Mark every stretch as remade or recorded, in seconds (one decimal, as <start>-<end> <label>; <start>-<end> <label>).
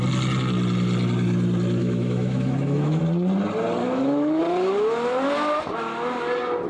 0.0-1.8 recorded; 1.8-3.0 remade; 3.0-3.8 recorded; 3.8-4.4 remade; 4.4-6.7 recorded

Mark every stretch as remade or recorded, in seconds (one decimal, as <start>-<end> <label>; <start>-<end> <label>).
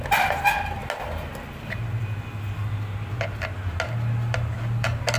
0.0-5.2 recorded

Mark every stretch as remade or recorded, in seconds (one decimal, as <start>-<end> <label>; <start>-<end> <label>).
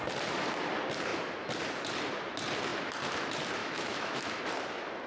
0.0-3.6 recorded; 3.6-4.4 remade; 4.4-5.1 recorded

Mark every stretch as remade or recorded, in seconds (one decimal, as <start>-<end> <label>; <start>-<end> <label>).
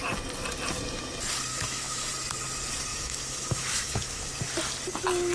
0.0-1.5 recorded; 1.5-2.1 remade; 2.1-2.9 recorded; 2.9-4.3 remade; 4.3-5.3 recorded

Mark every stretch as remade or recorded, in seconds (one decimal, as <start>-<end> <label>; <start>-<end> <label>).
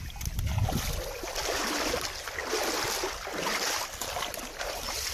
0.0-5.1 recorded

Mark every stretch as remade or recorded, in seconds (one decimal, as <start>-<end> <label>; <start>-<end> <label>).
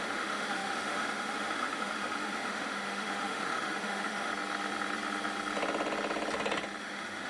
0.0-4.3 remade; 4.3-6.8 recorded; 6.8-7.3 remade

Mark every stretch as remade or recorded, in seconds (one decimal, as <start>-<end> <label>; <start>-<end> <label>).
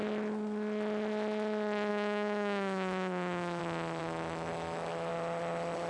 0.0-1.9 recorded; 1.9-3.6 remade; 3.6-4.0 recorded; 4.0-5.1 remade; 5.1-5.9 recorded